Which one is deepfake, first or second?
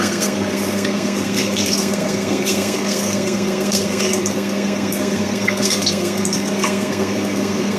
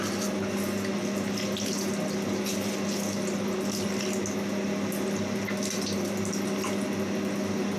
first